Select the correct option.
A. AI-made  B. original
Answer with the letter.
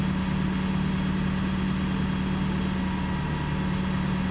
B